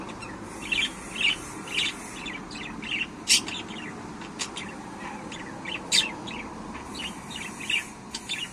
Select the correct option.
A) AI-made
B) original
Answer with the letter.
B